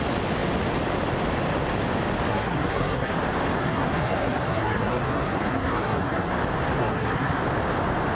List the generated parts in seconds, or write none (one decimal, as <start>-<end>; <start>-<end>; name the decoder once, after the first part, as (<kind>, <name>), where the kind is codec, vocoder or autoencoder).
2.3-3.1 (codec, SNAC); 3.6-6.3; 6.8-7.4